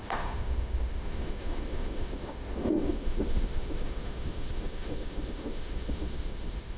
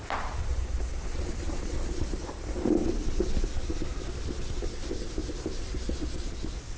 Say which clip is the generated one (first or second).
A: first